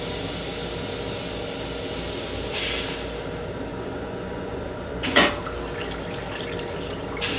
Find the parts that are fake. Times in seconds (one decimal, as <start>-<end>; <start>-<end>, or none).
3.7-5.3